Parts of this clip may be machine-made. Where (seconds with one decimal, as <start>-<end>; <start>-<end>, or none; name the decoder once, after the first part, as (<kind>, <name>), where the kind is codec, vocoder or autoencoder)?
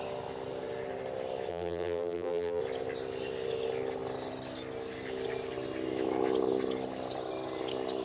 1.5-2.6 (vocoder, BigVGAN v2)